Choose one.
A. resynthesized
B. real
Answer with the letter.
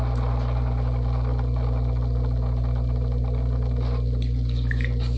B